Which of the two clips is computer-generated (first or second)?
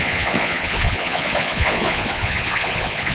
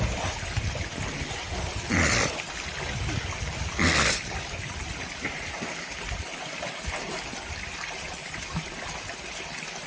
first